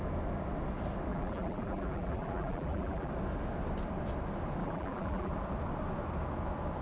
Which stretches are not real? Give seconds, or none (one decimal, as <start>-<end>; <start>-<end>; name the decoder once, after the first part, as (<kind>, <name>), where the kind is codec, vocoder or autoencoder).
1.1-3.1 (vocoder, BigVGAN v2); 4.6-5.3